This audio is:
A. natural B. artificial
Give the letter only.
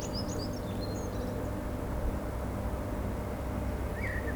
A